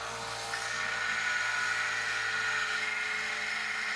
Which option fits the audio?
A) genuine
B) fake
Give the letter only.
A